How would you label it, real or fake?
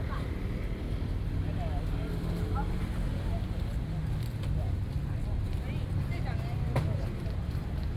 real